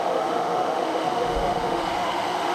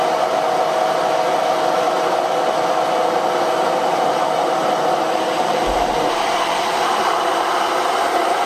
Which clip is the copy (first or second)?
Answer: first